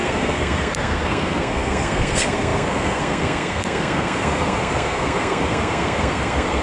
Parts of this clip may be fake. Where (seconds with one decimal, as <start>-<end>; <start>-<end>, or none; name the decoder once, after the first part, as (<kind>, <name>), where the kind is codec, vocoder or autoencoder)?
0.0-6.6 (codec, SNAC)